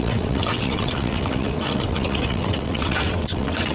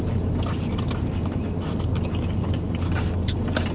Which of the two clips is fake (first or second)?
first